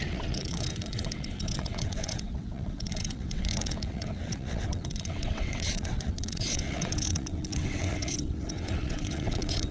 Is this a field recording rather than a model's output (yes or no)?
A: no